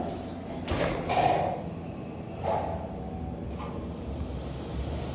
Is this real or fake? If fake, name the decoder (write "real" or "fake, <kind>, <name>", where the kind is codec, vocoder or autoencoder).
real